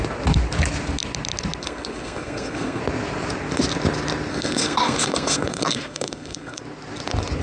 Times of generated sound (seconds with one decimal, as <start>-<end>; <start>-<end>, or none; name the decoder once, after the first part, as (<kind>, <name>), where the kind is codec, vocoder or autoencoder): 1.6-2.8 (codec, SNAC); 4.3-6.6